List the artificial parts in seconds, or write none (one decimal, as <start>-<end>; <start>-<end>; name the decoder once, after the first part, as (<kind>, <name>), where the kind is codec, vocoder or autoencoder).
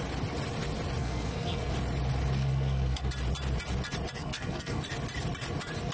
1.0-1.7 (codec, SNAC); 2.4-3.1; 4.2-4.8